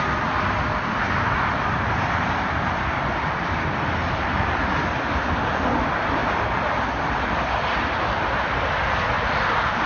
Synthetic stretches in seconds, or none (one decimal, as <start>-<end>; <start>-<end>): none